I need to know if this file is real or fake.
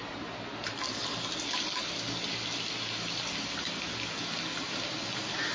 real